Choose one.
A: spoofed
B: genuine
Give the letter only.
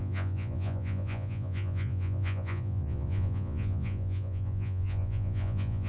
A